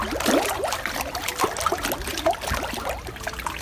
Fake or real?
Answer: real